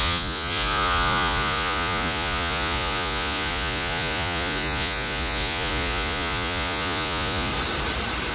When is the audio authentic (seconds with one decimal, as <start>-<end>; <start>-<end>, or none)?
7.5-8.3